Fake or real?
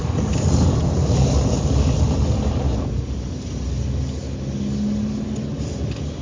real